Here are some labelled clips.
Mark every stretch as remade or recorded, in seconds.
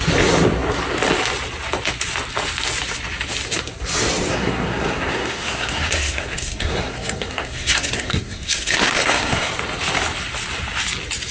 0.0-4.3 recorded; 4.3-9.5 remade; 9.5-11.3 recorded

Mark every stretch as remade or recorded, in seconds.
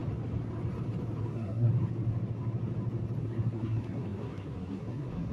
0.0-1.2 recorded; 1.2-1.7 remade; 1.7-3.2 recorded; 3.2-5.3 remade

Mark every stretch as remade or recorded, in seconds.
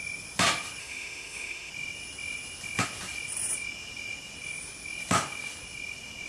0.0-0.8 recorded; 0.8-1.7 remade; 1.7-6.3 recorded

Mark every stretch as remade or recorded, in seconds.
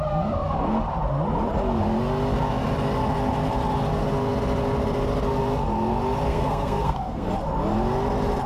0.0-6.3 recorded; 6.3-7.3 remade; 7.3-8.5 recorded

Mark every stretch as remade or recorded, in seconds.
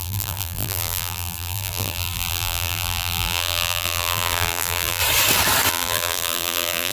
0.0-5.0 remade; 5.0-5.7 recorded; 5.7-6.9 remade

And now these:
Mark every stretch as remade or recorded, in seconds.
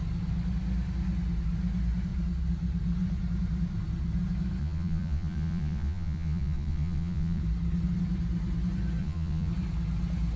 0.0-4.6 recorded; 4.6-7.4 remade; 7.4-9.0 recorded; 9.0-9.5 remade; 9.5-10.4 recorded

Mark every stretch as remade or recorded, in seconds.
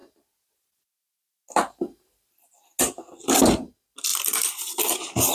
0.0-5.3 recorded